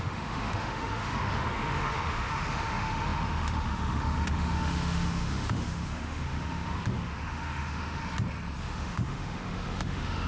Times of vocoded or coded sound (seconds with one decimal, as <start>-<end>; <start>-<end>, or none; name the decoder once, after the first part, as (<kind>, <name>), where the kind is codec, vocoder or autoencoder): 0.0-8.0 (autoencoder, DAC-VAE); 8.6-10.3